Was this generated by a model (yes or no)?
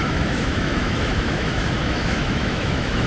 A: yes